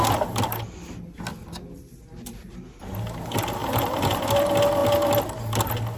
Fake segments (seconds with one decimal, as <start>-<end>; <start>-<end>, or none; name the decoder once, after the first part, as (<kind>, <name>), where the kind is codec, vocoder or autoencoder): 3.6-4.2 (vocoder, BigVGAN v2)

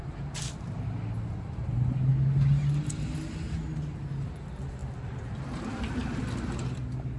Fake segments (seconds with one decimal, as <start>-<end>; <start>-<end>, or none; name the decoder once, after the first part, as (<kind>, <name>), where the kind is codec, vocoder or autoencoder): 4.8-6.1 (vocoder, BigVGAN v2)